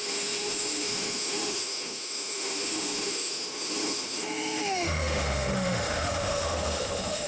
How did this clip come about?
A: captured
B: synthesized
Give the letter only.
B